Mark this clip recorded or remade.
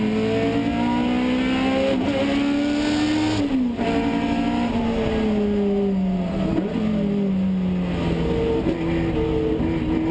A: recorded